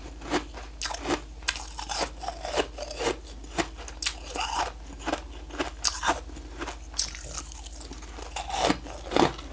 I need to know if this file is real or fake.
real